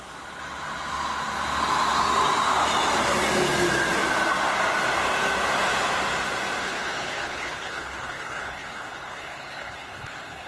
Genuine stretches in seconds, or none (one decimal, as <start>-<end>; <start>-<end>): 0.0-6.6